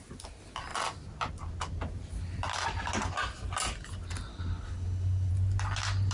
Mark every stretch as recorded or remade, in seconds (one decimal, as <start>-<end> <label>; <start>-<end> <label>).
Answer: 0.0-4.3 recorded; 4.3-5.3 remade; 5.3-6.1 recorded